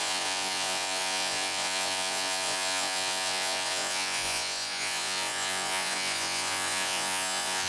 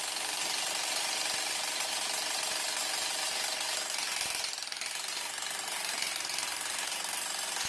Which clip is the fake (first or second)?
first